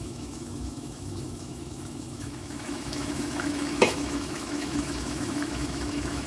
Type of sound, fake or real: fake